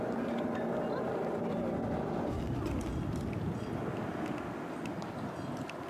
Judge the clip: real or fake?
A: real